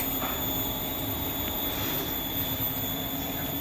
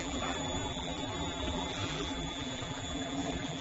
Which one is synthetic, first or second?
second